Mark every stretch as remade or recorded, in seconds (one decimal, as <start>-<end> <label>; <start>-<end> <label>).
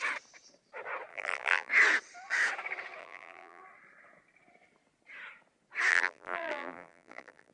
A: 0.0-1.1 recorded; 1.1-1.7 remade; 1.7-3.0 recorded; 3.0-3.6 remade; 3.6-5.9 recorded; 5.9-7.5 remade